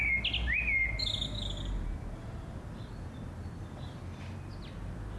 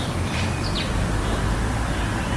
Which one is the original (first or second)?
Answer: first